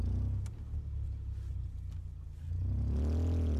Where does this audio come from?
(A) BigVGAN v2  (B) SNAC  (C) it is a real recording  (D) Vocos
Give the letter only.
C